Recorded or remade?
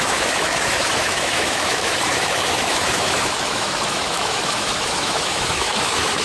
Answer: remade